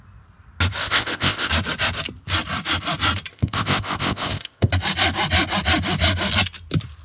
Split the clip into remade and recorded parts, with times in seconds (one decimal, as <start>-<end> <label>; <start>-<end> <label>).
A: 0.0-0.8 recorded; 0.8-1.5 remade; 1.5-3.3 recorded; 3.3-4.7 remade; 4.7-7.0 recorded